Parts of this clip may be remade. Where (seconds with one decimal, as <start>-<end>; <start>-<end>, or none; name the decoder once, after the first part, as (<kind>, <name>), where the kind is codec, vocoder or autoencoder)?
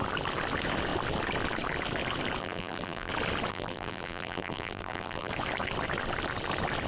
2.4-3.1 (vocoder, BigVGAN v2); 3.5-5.3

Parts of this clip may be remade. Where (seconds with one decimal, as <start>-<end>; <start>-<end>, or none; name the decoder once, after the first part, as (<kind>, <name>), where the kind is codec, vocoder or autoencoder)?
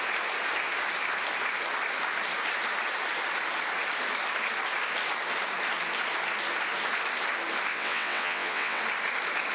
7.7-8.8 (vocoder, WaveNeXt)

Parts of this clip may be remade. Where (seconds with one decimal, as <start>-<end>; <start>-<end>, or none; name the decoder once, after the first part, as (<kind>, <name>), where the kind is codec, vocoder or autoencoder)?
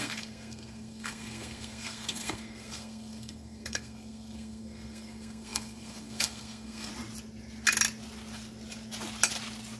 0.0-6.9 (codec, SNAC)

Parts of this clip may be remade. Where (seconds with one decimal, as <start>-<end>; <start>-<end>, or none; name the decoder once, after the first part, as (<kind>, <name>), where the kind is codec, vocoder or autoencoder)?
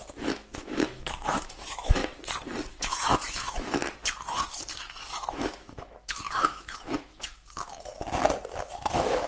0.0-2.0 (autoencoder, DAC-VAE); 2.7-3.8; 4.7-7.9; 8.5-9.3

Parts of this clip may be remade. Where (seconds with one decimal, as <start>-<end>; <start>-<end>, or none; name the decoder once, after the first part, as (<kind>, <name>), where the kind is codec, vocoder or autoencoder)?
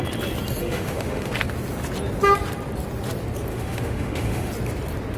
0.6-1.3 (autoencoder, DAC-VAE); 3.5-4.5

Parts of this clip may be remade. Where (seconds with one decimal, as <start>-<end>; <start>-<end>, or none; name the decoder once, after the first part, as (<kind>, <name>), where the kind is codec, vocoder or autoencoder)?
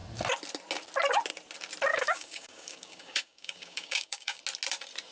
1.9-4.4 (codec, DAC)